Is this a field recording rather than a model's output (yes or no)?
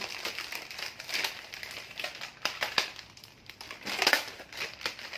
no